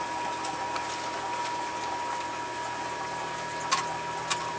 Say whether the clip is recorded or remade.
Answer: recorded